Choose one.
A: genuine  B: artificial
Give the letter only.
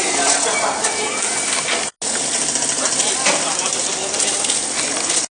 A